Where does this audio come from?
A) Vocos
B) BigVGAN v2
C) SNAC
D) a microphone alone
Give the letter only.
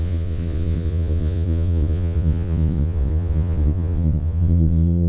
A